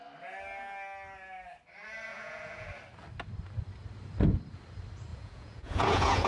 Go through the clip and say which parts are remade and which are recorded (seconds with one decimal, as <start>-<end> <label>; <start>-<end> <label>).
0.0-2.1 recorded; 2.1-2.7 remade; 2.7-5.1 recorded; 5.1-6.3 remade